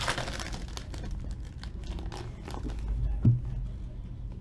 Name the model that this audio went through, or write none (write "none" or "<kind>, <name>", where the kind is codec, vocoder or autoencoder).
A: none